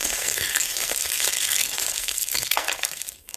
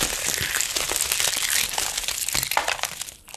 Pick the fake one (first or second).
first